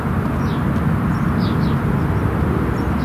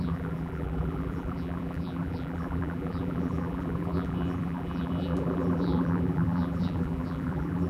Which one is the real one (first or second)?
first